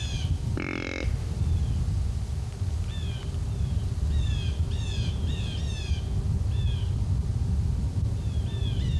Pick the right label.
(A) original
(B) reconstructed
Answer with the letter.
A